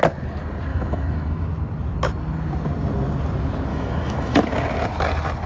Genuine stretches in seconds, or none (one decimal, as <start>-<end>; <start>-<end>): 0.0-0.7; 1.5-3.7; 4.4-5.5